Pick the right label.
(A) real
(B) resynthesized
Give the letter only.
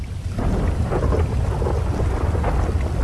A